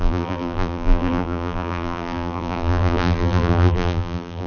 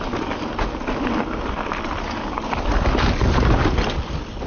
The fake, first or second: first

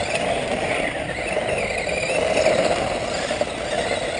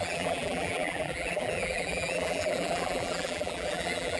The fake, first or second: second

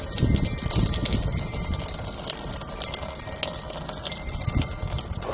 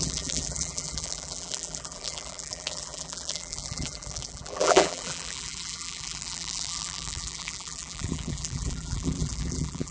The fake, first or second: second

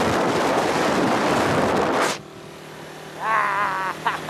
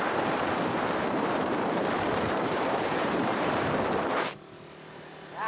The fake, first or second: second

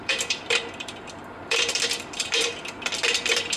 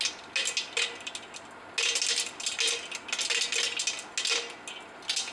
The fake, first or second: first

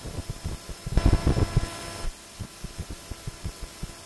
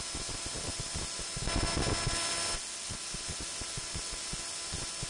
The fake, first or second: first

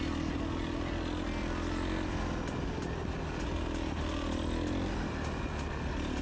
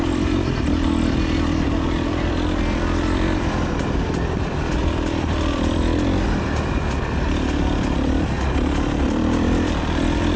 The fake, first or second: second